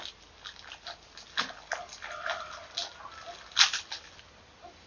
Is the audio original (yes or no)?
yes